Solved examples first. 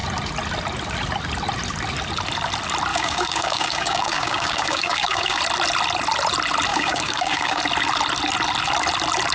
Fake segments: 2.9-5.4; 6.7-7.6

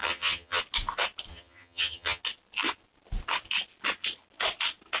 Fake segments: 0.0-0.6; 1.3-2.2

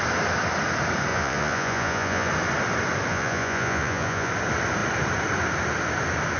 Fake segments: 1.1-2.3; 3.1-4.3

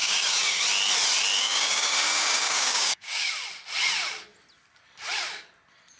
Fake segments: 0.0-0.6; 1.4-3.3